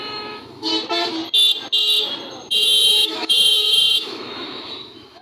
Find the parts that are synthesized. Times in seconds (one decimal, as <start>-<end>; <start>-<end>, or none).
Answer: 0.0-0.7; 2.5-5.2